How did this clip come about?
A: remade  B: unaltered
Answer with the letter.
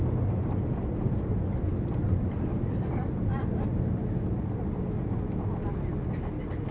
B